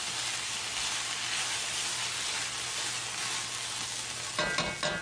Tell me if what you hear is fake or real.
real